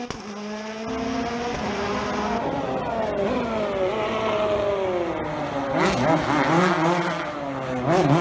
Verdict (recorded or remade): recorded